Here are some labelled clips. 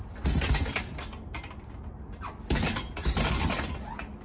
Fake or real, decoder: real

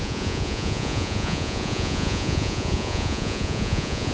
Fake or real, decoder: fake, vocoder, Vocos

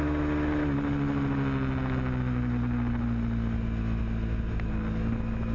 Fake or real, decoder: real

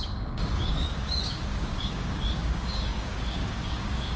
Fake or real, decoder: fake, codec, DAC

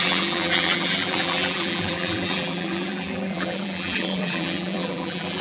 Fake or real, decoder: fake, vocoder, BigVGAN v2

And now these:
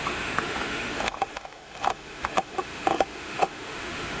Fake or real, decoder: fake, autoencoder, DAC-VAE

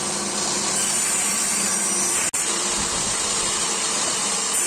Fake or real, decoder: real